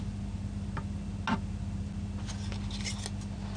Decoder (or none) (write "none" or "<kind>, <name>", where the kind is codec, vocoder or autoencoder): none